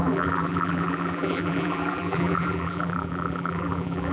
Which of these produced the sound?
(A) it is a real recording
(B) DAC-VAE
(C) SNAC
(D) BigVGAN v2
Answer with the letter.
D